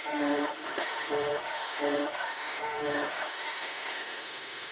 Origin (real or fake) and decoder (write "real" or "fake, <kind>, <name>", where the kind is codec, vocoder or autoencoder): fake, autoencoder, DAC-VAE